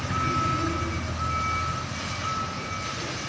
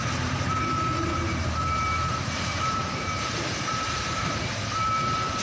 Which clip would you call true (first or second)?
first